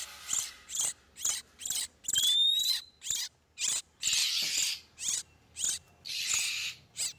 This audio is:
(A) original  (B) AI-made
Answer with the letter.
A